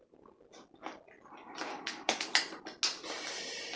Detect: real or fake real